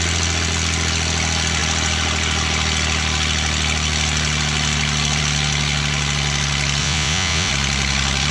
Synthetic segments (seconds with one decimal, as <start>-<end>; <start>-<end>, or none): 6.8-7.5